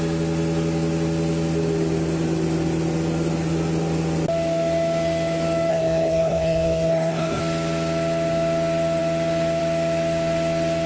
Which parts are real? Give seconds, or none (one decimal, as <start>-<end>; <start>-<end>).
0.0-5.7; 7.4-10.9